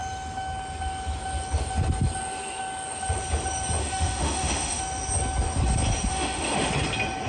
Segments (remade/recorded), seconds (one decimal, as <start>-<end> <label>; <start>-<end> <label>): 0.0-3.8 recorded; 3.8-4.8 remade; 4.8-6.1 recorded; 6.1-6.7 remade; 6.7-7.3 recorded